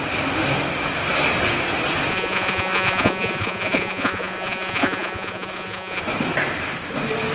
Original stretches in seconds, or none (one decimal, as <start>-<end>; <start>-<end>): 0.0-2.1; 6.0-7.3